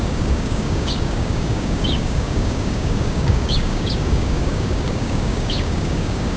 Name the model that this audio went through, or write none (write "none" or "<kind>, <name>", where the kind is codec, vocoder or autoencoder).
codec, DAC